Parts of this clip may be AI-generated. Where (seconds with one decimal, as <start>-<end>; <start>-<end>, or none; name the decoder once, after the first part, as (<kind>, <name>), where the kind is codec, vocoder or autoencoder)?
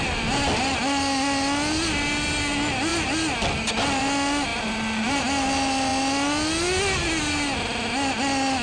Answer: 4.5-5.2 (vocoder, BigVGAN v2)